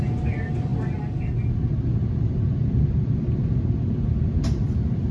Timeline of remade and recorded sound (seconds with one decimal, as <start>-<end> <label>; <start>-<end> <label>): 0.0-5.1 recorded